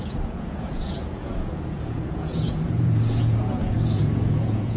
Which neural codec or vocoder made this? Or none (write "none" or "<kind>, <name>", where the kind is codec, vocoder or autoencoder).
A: vocoder, Vocos